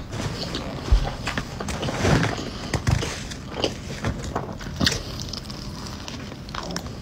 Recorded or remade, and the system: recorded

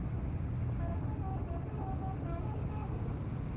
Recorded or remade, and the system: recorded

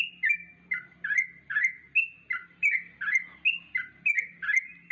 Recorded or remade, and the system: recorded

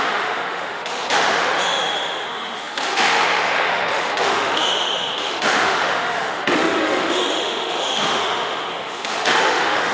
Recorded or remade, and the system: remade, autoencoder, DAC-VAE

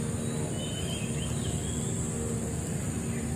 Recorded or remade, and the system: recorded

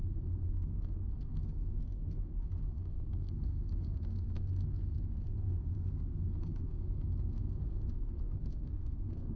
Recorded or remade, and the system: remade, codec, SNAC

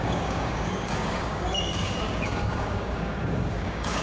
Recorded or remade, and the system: remade, codec, DAC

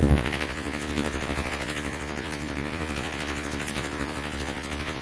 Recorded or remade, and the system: remade, vocoder, Vocos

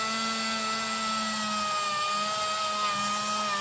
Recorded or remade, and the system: recorded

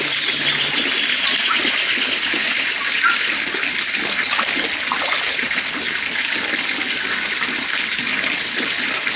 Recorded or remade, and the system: recorded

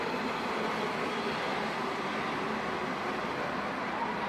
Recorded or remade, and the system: remade, vocoder, BigVGAN v2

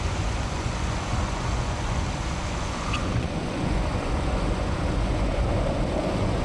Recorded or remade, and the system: remade, vocoder, Vocos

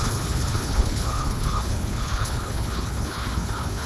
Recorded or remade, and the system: remade, codec, HILCodec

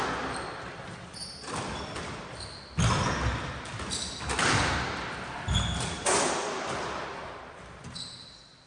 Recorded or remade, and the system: recorded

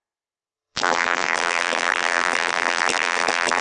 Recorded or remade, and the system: remade, vocoder, BigVGAN v2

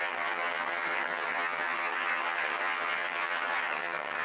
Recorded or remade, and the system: remade, vocoder, HiFi-GAN